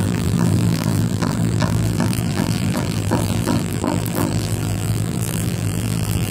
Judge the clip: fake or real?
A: fake